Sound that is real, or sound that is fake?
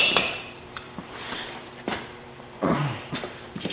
fake